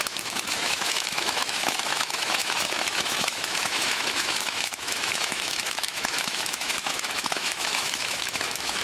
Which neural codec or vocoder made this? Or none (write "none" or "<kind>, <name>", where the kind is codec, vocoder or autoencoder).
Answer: autoencoder, DAC-VAE